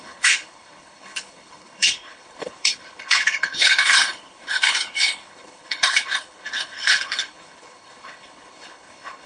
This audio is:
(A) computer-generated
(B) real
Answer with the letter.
A